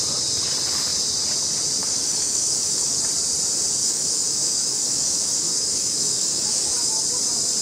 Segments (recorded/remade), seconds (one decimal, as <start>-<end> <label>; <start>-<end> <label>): 0.0-1.8 recorded; 1.8-3.0 remade; 3.0-3.8 recorded; 3.8-7.0 remade; 7.0-7.6 recorded